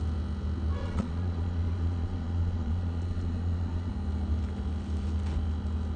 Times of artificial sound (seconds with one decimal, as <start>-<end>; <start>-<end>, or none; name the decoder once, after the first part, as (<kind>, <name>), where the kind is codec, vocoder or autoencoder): 0.8-3.9 (vocoder, Vocos)